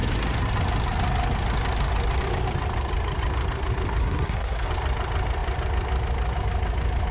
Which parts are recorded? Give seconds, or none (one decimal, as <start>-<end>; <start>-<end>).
0.0-4.0; 4.7-7.1